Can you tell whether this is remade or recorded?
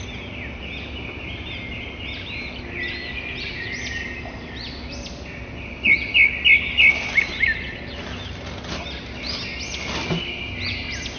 recorded